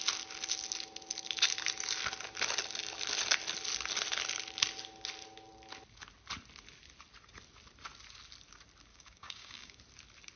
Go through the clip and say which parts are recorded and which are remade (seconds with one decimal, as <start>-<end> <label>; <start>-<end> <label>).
0.0-8.9 recorded; 8.9-9.8 remade; 9.8-10.4 recorded